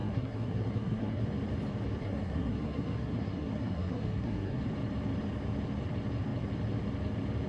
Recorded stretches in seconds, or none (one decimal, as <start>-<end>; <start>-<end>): 1.2-2.0; 4.6-7.5